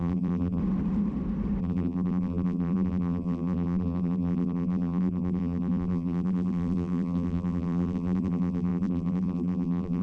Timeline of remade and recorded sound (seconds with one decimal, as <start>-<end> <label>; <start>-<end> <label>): 0.0-0.6 remade; 0.6-1.6 recorded; 1.6-10.0 remade